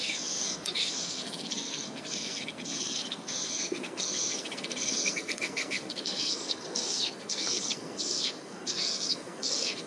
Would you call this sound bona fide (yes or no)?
no